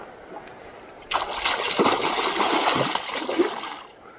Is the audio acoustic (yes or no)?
yes